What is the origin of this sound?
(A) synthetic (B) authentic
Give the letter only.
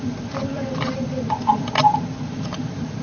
A